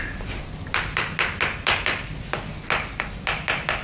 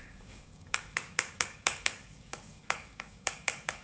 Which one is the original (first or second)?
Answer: first